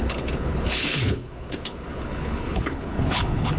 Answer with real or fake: fake